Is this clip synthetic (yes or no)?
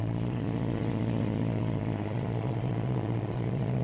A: yes